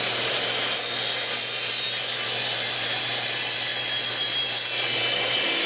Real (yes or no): yes